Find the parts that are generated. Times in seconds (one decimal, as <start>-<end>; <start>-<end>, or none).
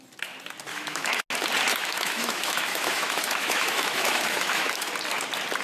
0.7-1.2; 1.7-4.9